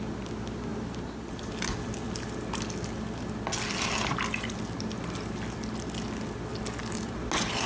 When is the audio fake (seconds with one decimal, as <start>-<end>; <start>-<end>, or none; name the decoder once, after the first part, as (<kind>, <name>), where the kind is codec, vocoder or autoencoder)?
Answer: 0.7-1.5 (vocoder, BigVGAN v2)